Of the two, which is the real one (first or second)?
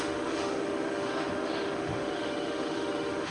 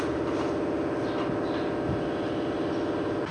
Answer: second